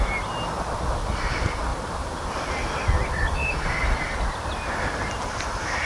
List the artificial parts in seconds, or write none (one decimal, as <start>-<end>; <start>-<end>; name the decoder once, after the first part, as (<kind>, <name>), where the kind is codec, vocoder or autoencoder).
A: none